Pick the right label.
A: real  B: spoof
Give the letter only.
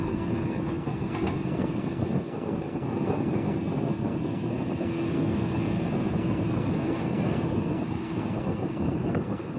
B